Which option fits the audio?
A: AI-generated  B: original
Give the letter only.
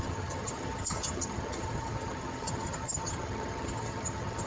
A